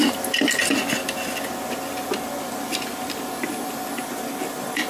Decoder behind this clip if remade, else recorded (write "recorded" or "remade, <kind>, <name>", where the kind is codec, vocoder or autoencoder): recorded